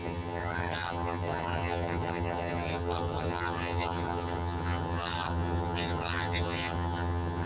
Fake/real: fake